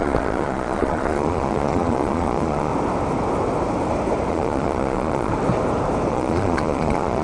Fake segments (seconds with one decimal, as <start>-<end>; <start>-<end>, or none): 0.0-2.7; 4.3-5.3; 6.1-7.2